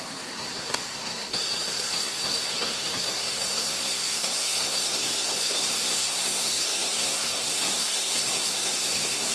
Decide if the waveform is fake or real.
fake